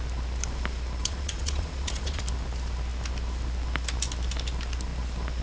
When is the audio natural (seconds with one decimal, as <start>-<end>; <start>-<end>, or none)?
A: 0.0-1.0; 2.2-5.4